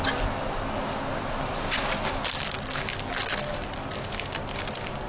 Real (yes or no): yes